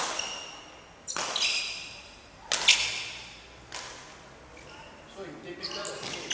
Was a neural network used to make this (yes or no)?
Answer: no